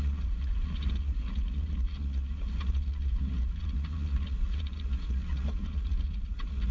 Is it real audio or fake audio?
fake